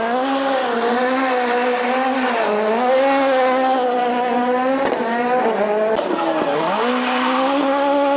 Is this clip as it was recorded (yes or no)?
yes